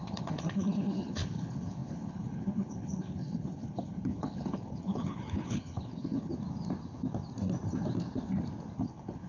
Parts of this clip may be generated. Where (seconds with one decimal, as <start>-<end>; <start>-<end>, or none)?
0.0-6.3; 8.8-9.3